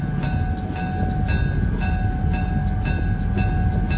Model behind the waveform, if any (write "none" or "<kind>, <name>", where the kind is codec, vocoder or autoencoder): none